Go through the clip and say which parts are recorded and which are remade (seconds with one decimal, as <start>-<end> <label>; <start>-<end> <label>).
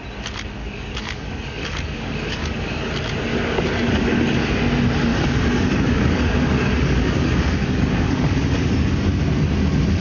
0.0-0.6 recorded; 0.6-2.9 remade; 2.9-3.3 recorded; 3.3-4.6 remade; 4.6-5.1 recorded; 5.1-8.7 remade; 8.7-10.0 recorded